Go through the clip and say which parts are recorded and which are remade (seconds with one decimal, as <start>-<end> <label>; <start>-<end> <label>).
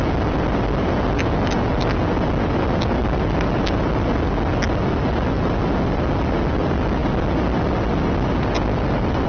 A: 0.0-9.3 recorded